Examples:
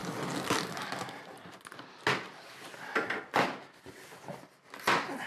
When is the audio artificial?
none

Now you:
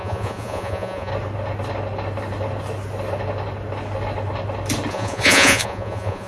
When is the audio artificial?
0.0-1.1 (vocoder, Vocos); 4.9-6.3

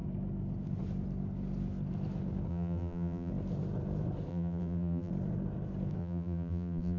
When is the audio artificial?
2.5-3.3 (vocoder, BigVGAN v2); 4.3-5.1; 6.0-7.0

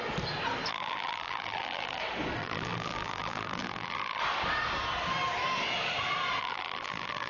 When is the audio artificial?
0.7-2.0 (vocoder, BigVGAN v2); 2.4-4.2; 6.4-7.3